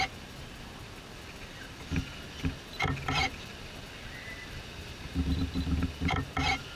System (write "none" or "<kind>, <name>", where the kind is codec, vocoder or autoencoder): none